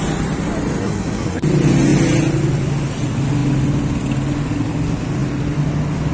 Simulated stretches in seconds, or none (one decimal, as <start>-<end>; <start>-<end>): 0.8-1.4